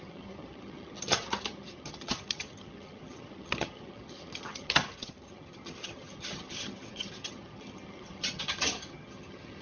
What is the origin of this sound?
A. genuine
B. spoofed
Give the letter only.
B